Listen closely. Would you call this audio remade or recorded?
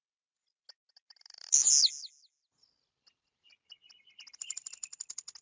recorded